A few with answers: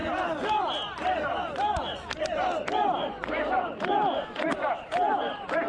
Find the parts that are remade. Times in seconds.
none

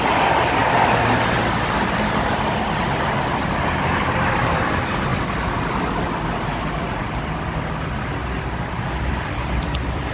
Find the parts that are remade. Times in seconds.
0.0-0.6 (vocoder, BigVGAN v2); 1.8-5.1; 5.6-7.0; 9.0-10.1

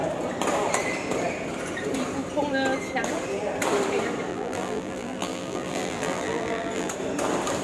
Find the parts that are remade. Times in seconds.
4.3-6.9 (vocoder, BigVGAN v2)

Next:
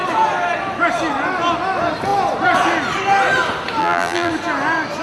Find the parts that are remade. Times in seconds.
3.8-4.3 (vocoder, BigVGAN v2)

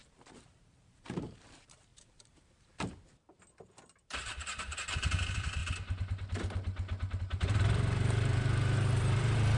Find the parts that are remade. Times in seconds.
0.0-5.6 (vocoder, BigVGAN v2); 7.2-9.6